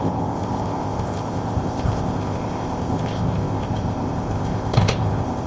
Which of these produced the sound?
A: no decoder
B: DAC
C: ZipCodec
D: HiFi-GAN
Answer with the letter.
C